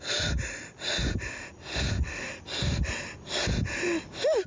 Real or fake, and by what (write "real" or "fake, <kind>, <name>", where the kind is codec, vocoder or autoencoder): real